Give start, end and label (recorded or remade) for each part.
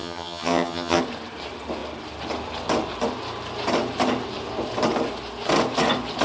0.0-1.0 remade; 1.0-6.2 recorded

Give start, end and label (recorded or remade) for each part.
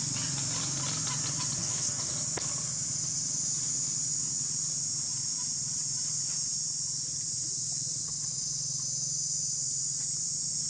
0.0-1.6 recorded; 1.6-2.1 remade; 2.1-10.7 recorded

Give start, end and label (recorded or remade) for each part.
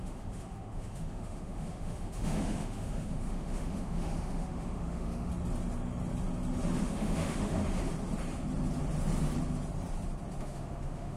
0.0-5.3 remade; 5.3-6.8 recorded; 6.8-7.6 remade; 7.6-10.4 recorded; 10.4-11.2 remade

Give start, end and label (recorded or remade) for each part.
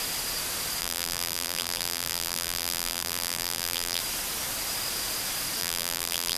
0.0-0.8 recorded; 0.8-4.0 remade; 4.0-5.6 recorded; 5.6-6.4 remade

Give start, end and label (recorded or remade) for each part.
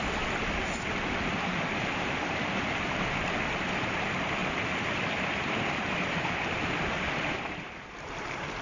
0.0-8.6 recorded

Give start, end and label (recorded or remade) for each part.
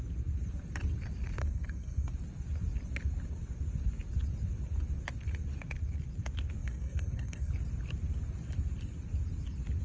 0.0-1.4 recorded; 1.4-2.1 remade; 2.1-6.6 recorded; 6.6-7.5 remade; 7.5-9.8 recorded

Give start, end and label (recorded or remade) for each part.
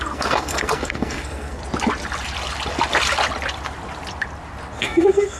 0.0-1.6 remade; 1.6-4.8 recorded; 4.8-5.4 remade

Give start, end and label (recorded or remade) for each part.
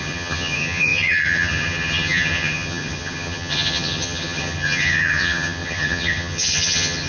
0.0-7.1 remade